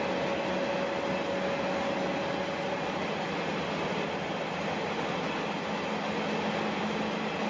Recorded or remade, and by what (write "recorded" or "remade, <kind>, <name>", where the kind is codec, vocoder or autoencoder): recorded